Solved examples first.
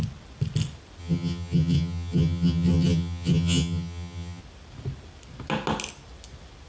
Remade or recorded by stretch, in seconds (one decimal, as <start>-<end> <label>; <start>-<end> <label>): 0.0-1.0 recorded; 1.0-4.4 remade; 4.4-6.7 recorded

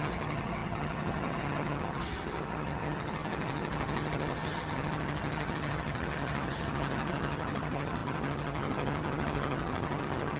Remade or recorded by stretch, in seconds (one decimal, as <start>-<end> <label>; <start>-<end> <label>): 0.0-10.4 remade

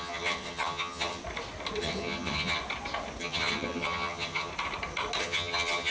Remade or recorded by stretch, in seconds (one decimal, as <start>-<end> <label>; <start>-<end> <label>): 0.0-1.2 remade; 1.2-1.8 recorded; 1.8-2.6 remade; 2.6-3.2 recorded; 3.2-4.5 remade; 4.5-5.2 recorded; 5.2-5.9 remade

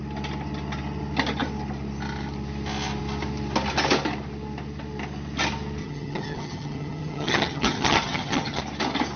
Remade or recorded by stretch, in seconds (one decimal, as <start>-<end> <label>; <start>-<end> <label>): 0.0-5.8 recorded; 5.8-8.6 remade; 8.6-9.2 recorded

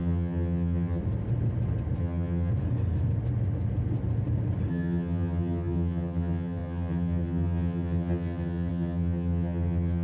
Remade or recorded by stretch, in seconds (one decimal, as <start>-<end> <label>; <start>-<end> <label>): 0.0-1.0 remade; 1.0-2.0 recorded; 2.0-2.5 remade; 2.5-4.7 recorded; 4.7-10.0 remade

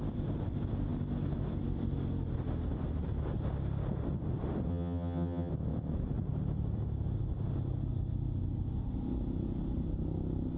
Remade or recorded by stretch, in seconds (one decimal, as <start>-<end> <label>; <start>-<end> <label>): 0.0-4.7 recorded; 4.7-5.5 remade; 5.5-10.6 recorded

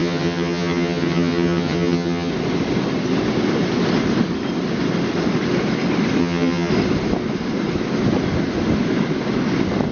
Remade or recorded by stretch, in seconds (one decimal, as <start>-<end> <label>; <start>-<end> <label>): 0.0-2.3 remade; 2.3-6.2 recorded; 6.2-6.7 remade; 6.7-9.9 recorded

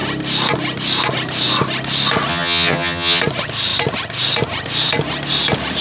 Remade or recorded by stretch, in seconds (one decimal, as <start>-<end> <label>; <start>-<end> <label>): 0.0-2.3 recorded; 2.3-3.2 remade; 3.2-5.8 recorded